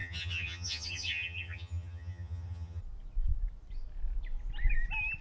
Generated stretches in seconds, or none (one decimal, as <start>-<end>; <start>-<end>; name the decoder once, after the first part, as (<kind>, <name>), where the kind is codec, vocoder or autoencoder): 0.0-2.8 (vocoder, HiFi-GAN)